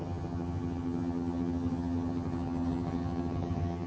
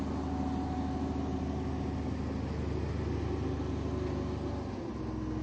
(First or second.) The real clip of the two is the second